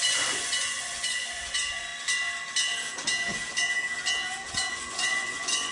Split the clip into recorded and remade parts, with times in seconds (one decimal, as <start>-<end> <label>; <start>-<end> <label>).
0.0-1.9 remade; 1.9-4.7 recorded; 4.7-5.7 remade